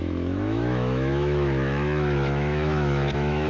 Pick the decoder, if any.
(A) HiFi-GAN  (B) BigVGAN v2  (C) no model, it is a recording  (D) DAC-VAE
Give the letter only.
D